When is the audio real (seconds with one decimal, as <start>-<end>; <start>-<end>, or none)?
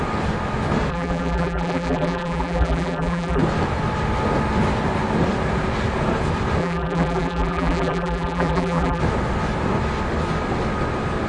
0.0-0.9; 3.4-6.6; 9.0-11.3